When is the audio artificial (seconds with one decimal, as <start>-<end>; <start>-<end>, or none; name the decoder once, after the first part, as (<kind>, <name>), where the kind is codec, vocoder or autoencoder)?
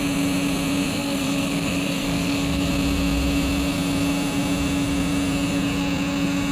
0.9-2.7 (codec, SNAC)